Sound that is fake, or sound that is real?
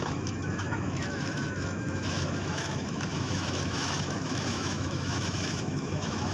fake